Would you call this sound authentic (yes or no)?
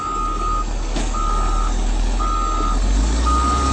no